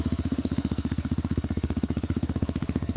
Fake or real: fake